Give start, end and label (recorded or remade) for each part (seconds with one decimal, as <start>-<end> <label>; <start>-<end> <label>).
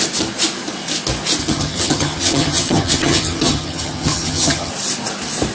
0.0-1.4 recorded; 1.4-4.7 remade; 4.7-5.5 recorded